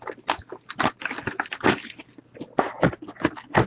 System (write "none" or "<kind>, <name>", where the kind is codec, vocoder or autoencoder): none